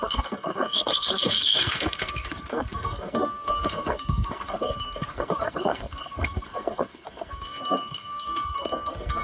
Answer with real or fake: fake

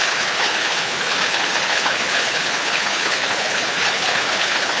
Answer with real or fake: fake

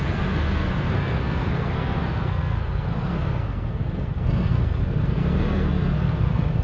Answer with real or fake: fake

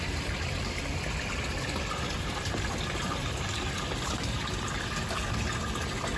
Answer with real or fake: real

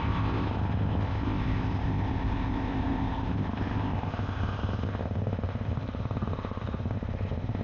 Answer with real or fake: fake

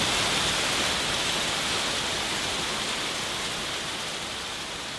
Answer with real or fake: real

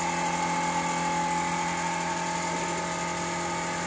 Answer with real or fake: real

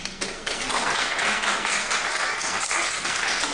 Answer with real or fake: fake